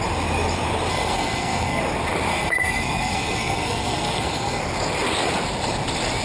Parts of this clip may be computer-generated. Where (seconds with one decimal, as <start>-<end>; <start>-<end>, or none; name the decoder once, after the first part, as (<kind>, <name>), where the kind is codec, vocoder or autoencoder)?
0.9-1.8 (codec, SNAC); 2.3-4.6